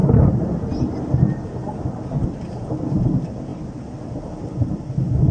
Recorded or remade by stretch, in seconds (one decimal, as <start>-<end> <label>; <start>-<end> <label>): 0.0-5.3 recorded